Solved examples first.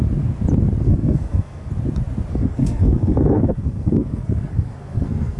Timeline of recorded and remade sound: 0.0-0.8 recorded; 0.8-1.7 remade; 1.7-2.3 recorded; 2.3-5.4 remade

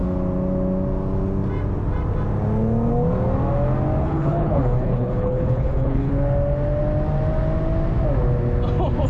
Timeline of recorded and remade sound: 0.0-4.0 recorded; 4.0-6.1 remade; 6.1-9.1 recorded

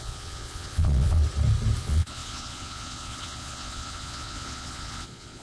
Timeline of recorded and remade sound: 0.0-1.2 remade; 1.2-1.8 recorded; 1.8-5.4 remade

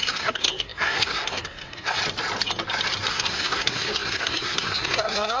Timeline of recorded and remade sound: 0.0-2.0 remade; 2.0-3.1 recorded; 3.1-5.4 remade